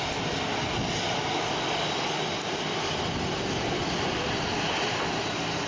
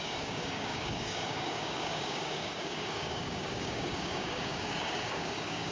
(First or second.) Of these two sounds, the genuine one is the first